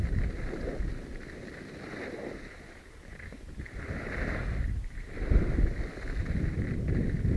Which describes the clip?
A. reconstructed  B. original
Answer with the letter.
A